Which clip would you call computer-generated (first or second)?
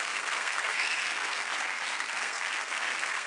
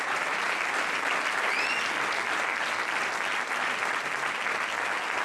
first